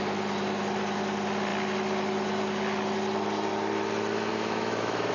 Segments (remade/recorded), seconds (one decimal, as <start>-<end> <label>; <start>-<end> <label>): 0.0-4.3 recorded; 4.3-5.1 remade